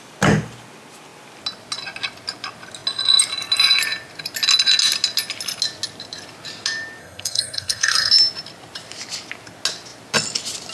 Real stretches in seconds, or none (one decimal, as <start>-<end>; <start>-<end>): 0.0-7.0; 8.1-10.7